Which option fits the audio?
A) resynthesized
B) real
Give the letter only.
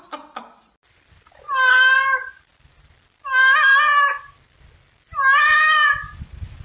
B